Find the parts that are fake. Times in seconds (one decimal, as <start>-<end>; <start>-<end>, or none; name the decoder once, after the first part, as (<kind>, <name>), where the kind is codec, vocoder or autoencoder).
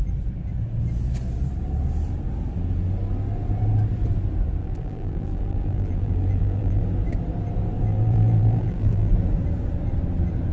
4.6-6.8 (vocoder, BigVGAN v2); 7.9-9.1